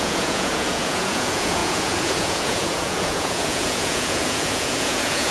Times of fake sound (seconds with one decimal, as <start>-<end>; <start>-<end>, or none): 0.0-5.3